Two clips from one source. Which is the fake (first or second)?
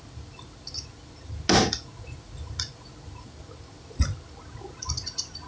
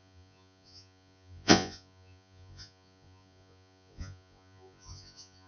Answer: second